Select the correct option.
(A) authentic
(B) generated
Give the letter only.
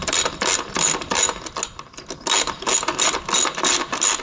A